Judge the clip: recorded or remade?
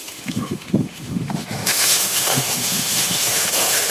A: remade